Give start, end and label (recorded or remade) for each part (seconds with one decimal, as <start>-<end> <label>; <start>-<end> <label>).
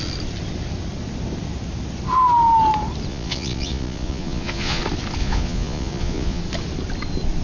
0.0-3.1 recorded; 3.1-4.8 remade; 4.8-5.2 recorded; 5.2-6.4 remade; 6.4-7.4 recorded